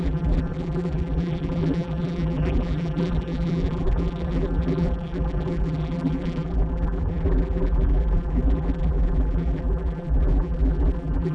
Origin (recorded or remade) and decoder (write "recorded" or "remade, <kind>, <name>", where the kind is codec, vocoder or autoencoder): remade, vocoder, BigVGAN v2